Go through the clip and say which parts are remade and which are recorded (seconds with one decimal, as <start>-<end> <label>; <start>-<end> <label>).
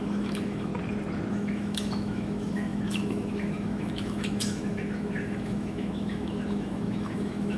0.0-0.7 remade; 0.7-1.3 recorded; 1.3-7.6 remade